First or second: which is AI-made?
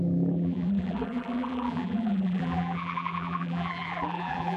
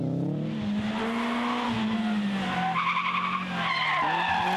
first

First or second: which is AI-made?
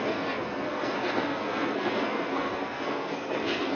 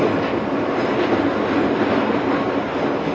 first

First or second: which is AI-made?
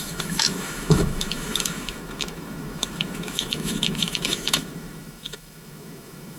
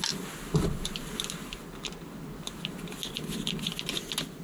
first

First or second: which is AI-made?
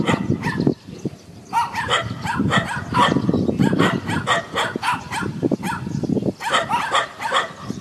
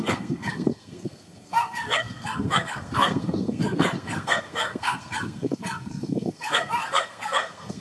second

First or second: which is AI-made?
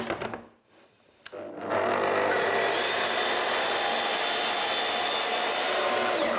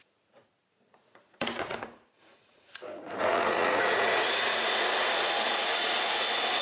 second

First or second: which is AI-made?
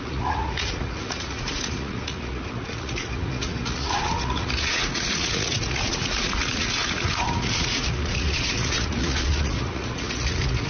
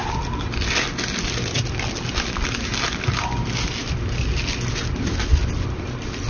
first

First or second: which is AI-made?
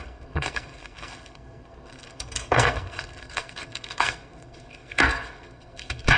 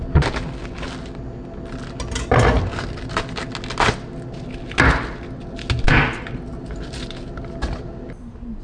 first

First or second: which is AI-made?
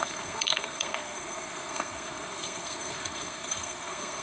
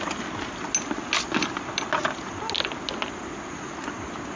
first